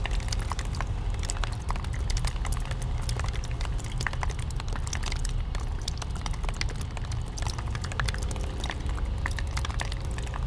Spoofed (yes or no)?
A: no